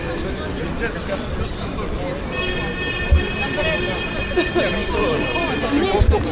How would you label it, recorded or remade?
recorded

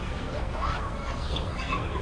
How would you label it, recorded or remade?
remade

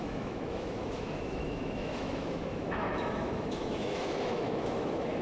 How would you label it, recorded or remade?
remade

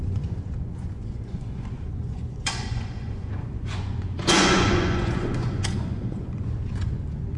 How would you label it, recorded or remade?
remade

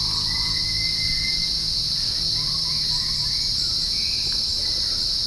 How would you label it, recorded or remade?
recorded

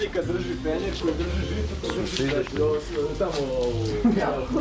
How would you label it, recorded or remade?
recorded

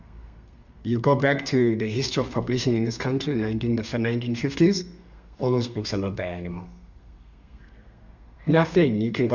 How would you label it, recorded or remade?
remade